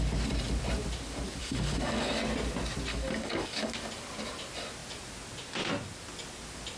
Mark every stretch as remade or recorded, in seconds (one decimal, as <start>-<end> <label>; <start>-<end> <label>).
0.0-1.4 recorded; 1.4-2.2 remade; 2.2-2.9 recorded; 2.9-3.7 remade; 3.7-6.8 recorded